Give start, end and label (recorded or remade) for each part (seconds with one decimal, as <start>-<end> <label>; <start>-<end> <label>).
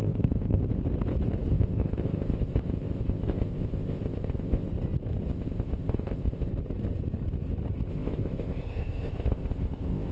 0.0-0.6 remade; 0.6-1.5 recorded; 1.5-4.7 remade; 4.7-5.3 recorded; 5.3-6.5 remade; 6.5-7.9 recorded; 7.9-10.1 remade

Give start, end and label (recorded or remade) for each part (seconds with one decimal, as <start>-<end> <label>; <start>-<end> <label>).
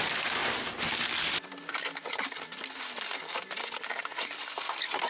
0.0-5.1 recorded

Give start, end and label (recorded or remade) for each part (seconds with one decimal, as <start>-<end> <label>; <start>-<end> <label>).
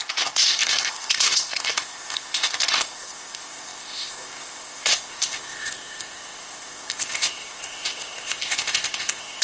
0.0-9.4 remade